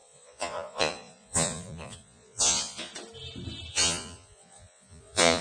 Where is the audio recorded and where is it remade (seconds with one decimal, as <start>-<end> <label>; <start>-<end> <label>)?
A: 0.0-2.9 remade; 2.9-3.7 recorded; 3.7-5.4 remade